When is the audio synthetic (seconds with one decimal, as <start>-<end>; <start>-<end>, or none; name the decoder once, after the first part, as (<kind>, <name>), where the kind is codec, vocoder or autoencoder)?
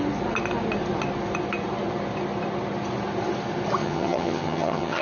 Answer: 3.8-5.0 (vocoder, HiFi-GAN)